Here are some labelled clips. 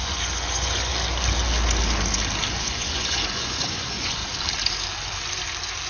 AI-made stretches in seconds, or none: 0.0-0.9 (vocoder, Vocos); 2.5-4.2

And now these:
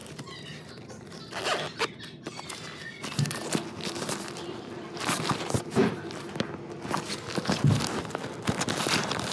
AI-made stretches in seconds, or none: 1.2-5.8 (vocoder, BigVGAN v2); 7.4-9.3